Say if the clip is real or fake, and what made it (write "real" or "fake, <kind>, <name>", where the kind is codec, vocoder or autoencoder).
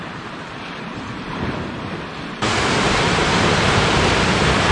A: fake, vocoder, BigVGAN v2